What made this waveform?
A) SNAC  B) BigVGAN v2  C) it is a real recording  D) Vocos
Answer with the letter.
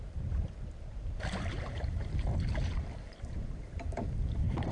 B